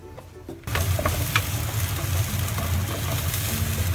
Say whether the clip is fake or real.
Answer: real